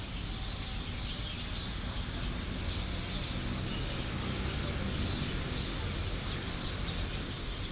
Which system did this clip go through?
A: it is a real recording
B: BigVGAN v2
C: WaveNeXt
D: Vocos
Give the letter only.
A